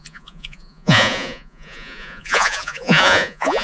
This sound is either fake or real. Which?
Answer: fake